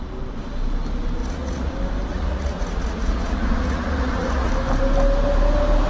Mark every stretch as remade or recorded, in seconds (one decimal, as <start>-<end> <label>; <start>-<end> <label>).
0.0-1.2 recorded; 1.2-1.7 remade; 1.7-2.1 recorded; 2.1-4.5 remade; 4.5-5.9 recorded